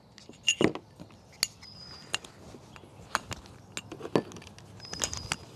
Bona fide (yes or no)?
yes